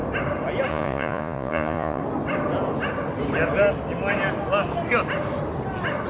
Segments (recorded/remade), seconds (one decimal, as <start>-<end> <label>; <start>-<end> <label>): 0.0-0.7 recorded; 0.7-2.0 remade; 2.0-6.1 recorded